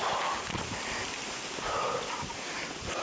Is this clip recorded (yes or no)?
yes